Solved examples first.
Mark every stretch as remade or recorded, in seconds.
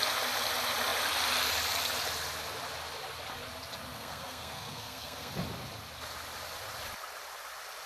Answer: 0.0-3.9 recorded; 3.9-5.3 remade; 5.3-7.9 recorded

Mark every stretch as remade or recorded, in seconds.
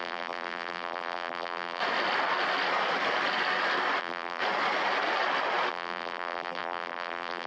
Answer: 0.0-1.8 remade; 1.8-4.0 recorded; 4.0-4.4 remade; 4.4-5.7 recorded; 5.7-7.5 remade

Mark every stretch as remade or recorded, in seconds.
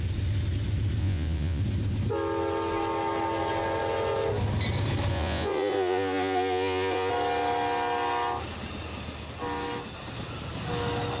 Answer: 0.0-1.0 recorded; 1.0-1.6 remade; 1.6-5.1 recorded; 5.1-7.1 remade; 7.1-11.2 recorded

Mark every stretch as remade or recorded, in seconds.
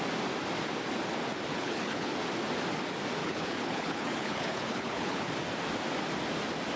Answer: 0.0-1.5 recorded; 1.5-2.1 remade; 2.1-3.2 recorded; 3.2-5.3 remade; 5.3-6.8 recorded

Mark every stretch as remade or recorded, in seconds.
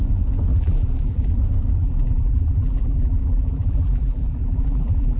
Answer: 0.0-0.5 recorded; 0.5-1.3 remade; 1.3-1.8 recorded; 1.8-5.2 remade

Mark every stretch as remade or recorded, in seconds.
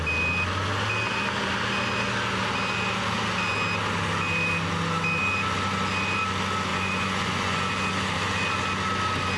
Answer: 0.0-6.7 recorded; 6.7-7.7 remade; 7.7-9.4 recorded